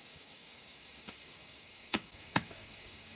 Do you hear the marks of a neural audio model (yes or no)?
yes